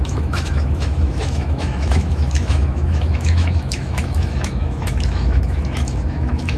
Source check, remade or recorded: remade